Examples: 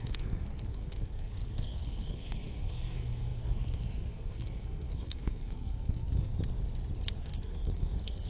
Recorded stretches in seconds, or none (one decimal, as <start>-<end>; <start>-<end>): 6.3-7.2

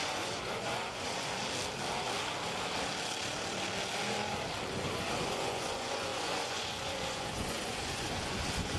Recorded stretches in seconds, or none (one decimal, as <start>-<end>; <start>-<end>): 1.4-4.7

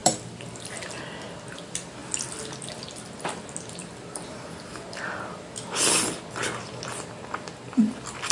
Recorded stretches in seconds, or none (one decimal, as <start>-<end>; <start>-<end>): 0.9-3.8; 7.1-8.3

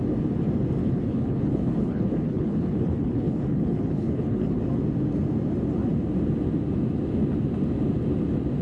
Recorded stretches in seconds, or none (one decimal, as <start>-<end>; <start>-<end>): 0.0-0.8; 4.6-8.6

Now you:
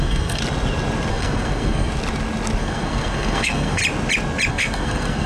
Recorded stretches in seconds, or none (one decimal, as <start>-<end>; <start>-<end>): 0.4-1.1; 1.9-2.6; 3.8-4.5

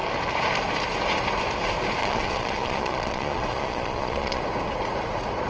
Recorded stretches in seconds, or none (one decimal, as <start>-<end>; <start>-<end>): 0.0-2.0; 4.4-5.5

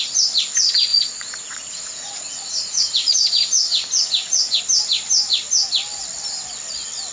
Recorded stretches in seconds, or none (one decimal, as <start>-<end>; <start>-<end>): 0.0-0.9; 4.6-7.1

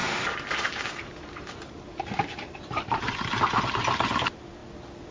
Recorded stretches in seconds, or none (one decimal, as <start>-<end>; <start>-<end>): 3.1-5.1